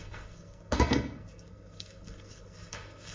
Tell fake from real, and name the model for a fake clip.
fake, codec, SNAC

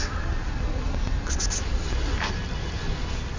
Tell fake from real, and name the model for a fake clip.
real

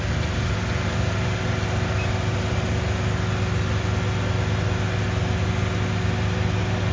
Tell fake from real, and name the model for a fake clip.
real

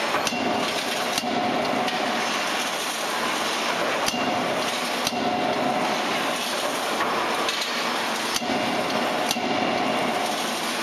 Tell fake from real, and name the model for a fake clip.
real